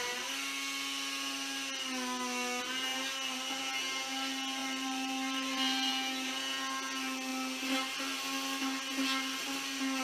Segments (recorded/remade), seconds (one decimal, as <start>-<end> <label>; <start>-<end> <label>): 0.0-4.6 recorded; 4.6-5.9 remade; 5.9-10.0 recorded

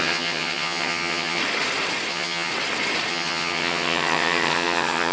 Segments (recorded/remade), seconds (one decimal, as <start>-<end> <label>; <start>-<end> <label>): 0.0-1.4 remade; 1.4-2.1 recorded; 2.1-2.5 remade; 2.5-3.1 recorded; 3.1-5.1 remade

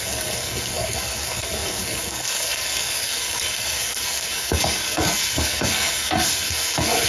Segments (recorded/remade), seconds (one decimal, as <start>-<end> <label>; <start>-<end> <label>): 0.0-7.1 remade

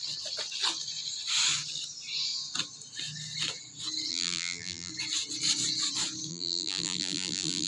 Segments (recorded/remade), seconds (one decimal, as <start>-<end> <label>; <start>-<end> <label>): 0.0-4.1 recorded; 4.1-4.9 remade; 4.9-6.3 recorded; 6.3-7.7 remade

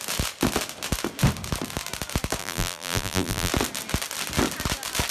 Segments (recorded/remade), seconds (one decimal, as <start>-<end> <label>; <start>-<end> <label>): 0.0-2.4 recorded; 2.4-3.5 remade; 3.5-5.1 recorded

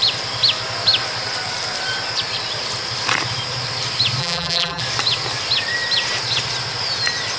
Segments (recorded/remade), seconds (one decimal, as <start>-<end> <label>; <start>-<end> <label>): 0.0-4.2 recorded; 4.2-4.8 remade; 4.8-7.4 recorded